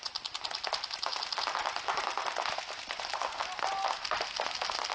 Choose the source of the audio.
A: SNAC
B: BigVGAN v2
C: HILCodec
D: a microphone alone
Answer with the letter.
D